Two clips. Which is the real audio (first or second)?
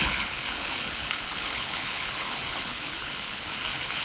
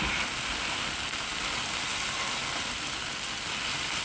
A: second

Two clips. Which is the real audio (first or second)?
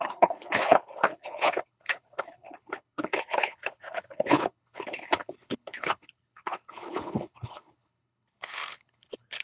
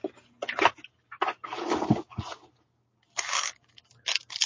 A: second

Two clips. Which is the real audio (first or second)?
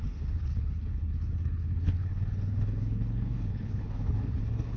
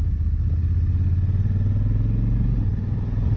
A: second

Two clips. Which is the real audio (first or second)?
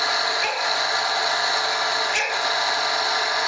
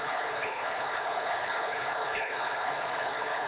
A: first